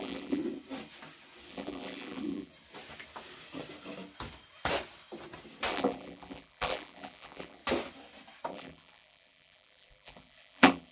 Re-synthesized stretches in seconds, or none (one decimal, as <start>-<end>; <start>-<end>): 0.0-0.4; 1.5-2.5; 5.7-7.6; 8.5-10.9